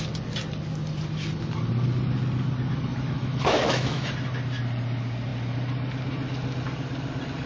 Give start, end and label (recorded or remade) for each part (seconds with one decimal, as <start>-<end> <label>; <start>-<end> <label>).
0.0-2.9 recorded; 2.9-4.1 remade; 4.1-7.5 recorded